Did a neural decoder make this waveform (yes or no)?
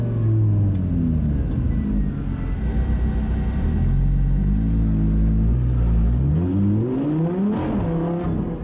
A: no